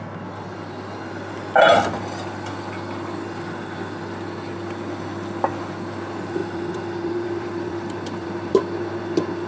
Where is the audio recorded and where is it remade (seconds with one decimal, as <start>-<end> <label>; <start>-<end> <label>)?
0.0-6.4 recorded; 6.4-8.6 remade; 8.6-9.5 recorded